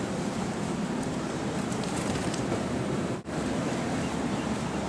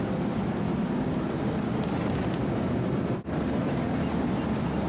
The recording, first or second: second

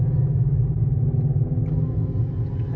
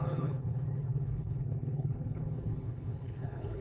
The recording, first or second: first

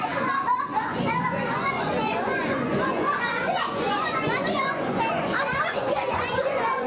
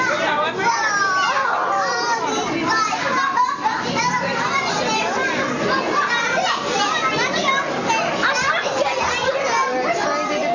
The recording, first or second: second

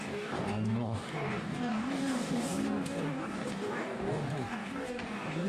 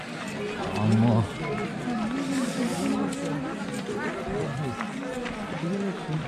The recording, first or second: second